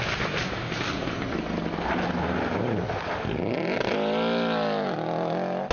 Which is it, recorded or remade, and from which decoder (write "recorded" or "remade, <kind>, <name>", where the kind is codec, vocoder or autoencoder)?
recorded